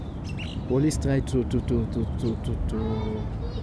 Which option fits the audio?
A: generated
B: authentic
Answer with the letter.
B